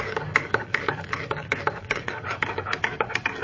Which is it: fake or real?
fake